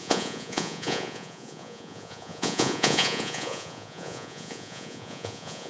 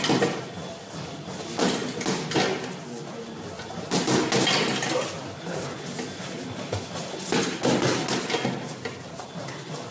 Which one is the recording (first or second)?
second